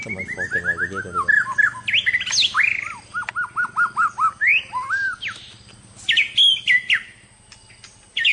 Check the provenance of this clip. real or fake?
real